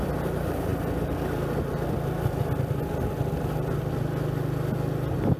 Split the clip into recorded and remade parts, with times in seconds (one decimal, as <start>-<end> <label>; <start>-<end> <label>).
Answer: 0.0-5.4 recorded